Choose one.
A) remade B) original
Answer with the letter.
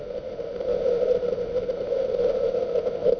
A